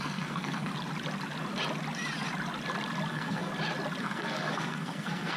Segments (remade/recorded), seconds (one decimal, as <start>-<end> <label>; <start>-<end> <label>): 0.0-0.7 remade; 0.7-3.1 recorded; 3.1-3.5 remade; 3.5-4.0 recorded; 4.0-5.4 remade